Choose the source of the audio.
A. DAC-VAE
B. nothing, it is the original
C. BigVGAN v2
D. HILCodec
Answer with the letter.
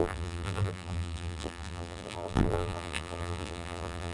C